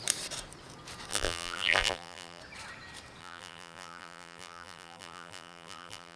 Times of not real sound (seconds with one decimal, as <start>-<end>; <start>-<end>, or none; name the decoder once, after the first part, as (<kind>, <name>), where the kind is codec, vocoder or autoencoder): 1.1-2.4 (vocoder, BigVGAN v2); 3.2-6.2